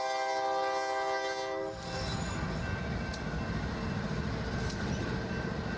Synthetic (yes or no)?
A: no